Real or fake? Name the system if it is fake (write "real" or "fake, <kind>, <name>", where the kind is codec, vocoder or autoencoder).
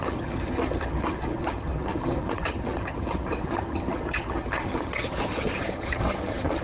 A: fake, vocoder, HiFi-GAN